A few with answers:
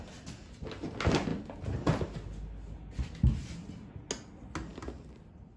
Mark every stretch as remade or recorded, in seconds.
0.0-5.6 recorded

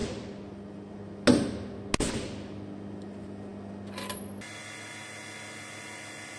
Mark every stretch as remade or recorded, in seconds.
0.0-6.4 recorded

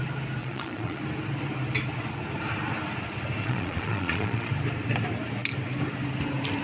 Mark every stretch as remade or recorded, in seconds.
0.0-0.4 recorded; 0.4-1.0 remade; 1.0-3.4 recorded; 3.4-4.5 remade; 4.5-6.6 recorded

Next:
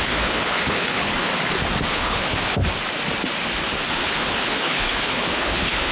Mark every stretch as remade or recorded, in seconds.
0.0-1.3 remade; 1.3-1.9 recorded; 1.9-2.6 remade; 2.6-3.9 recorded; 3.9-5.9 remade

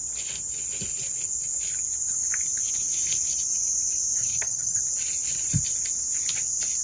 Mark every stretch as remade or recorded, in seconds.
0.0-4.2 recorded; 4.2-4.8 remade; 4.8-6.8 recorded

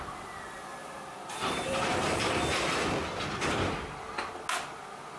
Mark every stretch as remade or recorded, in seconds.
0.0-0.7 recorded; 0.7-2.3 remade; 2.3-5.2 recorded

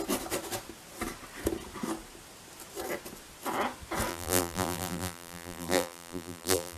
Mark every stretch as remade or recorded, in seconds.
0.0-4.1 recorded; 4.1-6.8 remade